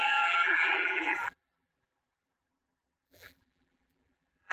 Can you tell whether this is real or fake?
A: fake